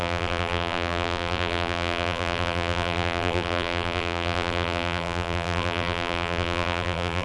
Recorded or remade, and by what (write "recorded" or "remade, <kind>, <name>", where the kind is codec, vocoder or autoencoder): remade, vocoder, BigVGAN v2